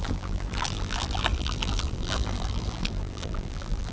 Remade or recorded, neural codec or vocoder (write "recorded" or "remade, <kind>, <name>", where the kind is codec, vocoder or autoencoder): remade, vocoder, BigVGAN v2